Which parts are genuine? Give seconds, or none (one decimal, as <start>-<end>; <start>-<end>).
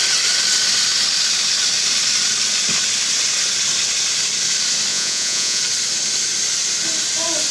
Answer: 0.0-4.9; 5.6-7.5